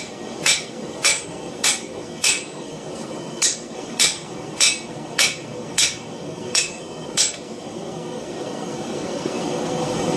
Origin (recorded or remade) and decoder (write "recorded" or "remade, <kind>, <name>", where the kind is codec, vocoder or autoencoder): remade, codec, SNAC